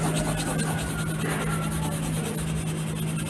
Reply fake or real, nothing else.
real